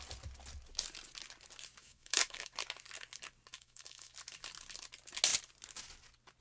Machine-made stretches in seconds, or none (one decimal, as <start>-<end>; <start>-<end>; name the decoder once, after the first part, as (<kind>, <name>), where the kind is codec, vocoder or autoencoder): 1.8-2.5 (autoencoder, DAC-VAE); 3.5-4.1